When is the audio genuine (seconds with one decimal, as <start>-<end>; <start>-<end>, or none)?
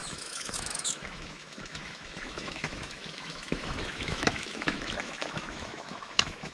none